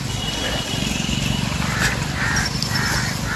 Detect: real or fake real